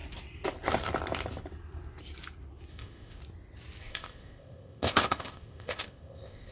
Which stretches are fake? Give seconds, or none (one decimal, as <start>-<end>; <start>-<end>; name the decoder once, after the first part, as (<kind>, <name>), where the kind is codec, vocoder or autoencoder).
2.7-3.2 (codec, ZipCodec); 3.8-6.5